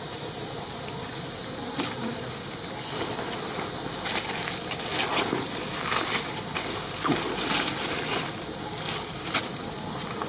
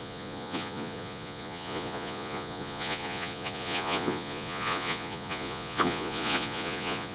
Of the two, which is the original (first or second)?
first